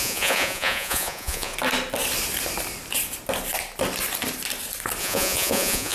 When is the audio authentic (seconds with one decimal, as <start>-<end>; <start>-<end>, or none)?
1.5-5.0

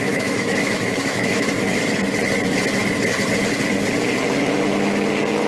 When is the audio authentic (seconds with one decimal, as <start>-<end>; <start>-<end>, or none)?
1.5-5.5

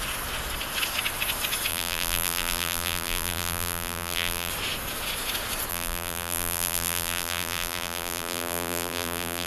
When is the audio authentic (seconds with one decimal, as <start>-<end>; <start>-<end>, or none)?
0.0-1.7; 4.5-5.7